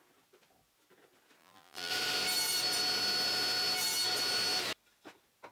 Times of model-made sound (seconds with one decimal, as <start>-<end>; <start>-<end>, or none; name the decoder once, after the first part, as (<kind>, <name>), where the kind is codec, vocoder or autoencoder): 1.4-1.9 (vocoder, BigVGAN v2)